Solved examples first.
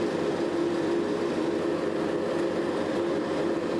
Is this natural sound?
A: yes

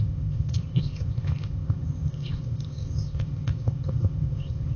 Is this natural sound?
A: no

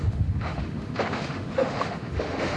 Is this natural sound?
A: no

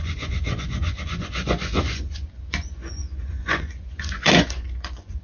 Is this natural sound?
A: no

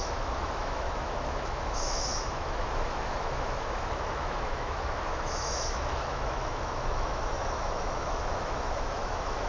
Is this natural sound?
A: no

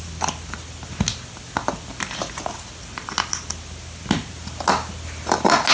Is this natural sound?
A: yes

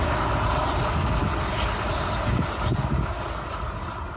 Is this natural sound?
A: yes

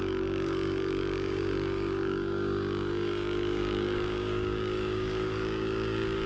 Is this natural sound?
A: no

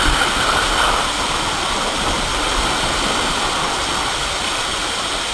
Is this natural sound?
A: yes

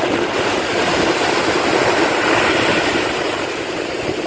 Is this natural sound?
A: no